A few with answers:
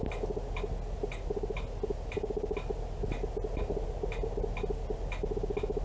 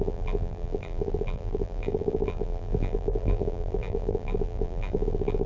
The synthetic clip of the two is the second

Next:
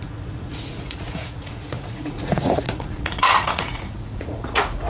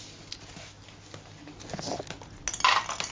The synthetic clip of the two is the first